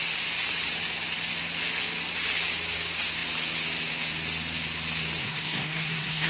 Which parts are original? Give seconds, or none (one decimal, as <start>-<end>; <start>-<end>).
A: 0.0-5.2